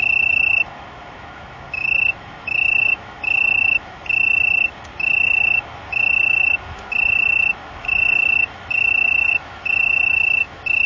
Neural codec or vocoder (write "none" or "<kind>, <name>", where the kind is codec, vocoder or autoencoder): autoencoder, DAC-VAE